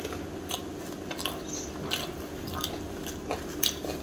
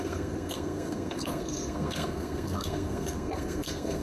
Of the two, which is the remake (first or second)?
second